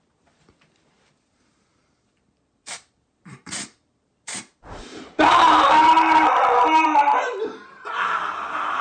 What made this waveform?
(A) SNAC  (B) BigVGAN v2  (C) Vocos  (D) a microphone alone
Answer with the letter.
B